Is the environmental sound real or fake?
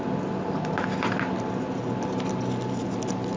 real